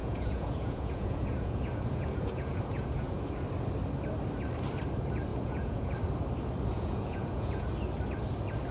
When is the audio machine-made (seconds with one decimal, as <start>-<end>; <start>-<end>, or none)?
0.0-3.2; 5.3-5.9; 6.7-7.7